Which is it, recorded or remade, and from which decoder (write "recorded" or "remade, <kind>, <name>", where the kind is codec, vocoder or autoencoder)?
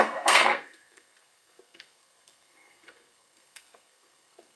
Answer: remade, codec, SNAC